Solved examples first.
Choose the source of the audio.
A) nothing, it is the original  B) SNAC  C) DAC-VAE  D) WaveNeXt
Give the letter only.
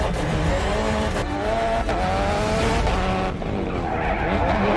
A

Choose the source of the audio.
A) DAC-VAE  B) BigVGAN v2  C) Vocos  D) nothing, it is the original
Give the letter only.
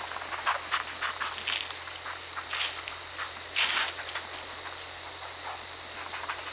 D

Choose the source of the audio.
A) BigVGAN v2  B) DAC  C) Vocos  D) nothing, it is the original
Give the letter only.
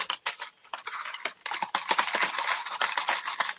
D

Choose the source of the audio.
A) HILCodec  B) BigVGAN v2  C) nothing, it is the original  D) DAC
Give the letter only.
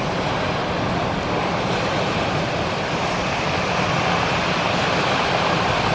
C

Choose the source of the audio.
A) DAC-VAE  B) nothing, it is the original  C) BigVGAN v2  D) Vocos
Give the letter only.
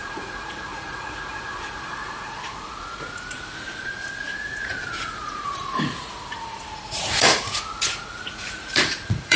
D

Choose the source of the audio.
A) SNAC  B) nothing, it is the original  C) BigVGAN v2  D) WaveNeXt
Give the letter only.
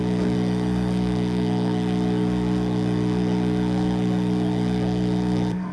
A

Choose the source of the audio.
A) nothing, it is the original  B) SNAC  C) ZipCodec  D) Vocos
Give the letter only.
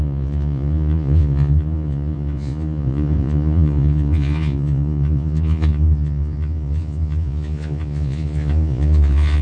D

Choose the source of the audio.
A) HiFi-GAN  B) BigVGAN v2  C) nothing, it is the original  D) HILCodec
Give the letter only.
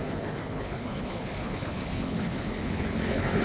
D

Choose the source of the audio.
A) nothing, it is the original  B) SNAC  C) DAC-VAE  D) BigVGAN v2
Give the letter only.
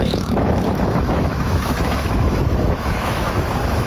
C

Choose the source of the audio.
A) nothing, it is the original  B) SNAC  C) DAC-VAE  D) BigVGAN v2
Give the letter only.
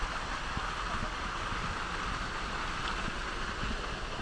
A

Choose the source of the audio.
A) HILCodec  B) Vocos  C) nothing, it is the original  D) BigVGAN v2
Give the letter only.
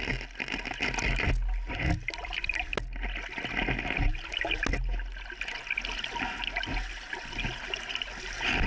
C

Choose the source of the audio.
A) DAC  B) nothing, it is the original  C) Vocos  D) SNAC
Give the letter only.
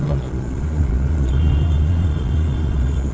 C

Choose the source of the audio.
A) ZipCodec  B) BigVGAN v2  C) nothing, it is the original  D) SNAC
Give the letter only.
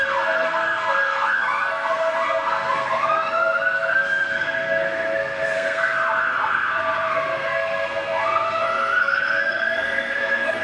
D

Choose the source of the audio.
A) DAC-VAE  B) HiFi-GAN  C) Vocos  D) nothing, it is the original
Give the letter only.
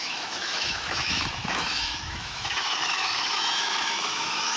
A